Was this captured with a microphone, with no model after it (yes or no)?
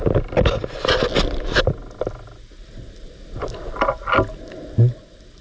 yes